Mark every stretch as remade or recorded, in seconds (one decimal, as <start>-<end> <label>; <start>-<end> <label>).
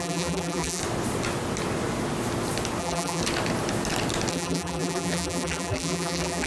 0.0-0.8 remade; 0.8-2.8 recorded; 2.8-3.2 remade; 3.2-4.3 recorded; 4.3-6.5 remade